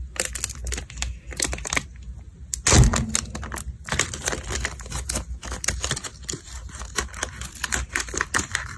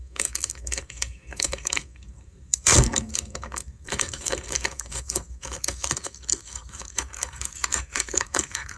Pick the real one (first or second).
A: first